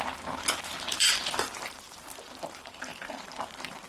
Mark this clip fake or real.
fake